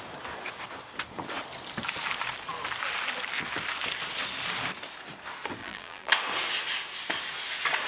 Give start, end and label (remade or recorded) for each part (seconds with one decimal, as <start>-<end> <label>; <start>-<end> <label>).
0.0-5.6 recorded; 5.6-6.1 remade; 6.1-7.9 recorded